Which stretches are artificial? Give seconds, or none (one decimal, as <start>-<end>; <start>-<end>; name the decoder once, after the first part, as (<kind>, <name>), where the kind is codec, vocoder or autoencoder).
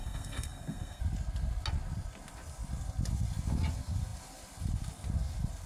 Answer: 0.0-1.0 (codec, SNAC)